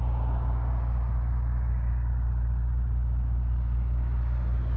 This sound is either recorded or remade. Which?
recorded